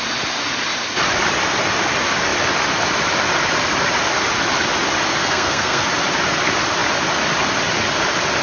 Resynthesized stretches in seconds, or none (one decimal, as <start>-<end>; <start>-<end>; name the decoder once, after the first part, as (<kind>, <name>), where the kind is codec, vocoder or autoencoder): 5.2-5.9 (codec, SNAC)

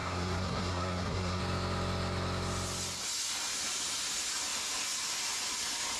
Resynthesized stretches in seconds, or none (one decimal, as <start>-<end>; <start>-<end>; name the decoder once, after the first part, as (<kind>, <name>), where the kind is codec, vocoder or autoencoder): 0.0-1.4 (codec, SNAC)